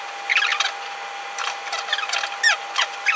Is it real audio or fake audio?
real